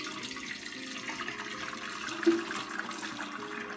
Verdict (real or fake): real